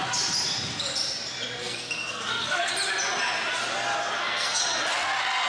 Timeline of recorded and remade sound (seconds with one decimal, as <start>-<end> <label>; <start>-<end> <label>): 0.0-1.6 recorded; 1.6-2.7 remade; 2.7-4.0 recorded; 4.0-4.6 remade; 4.6-5.5 recorded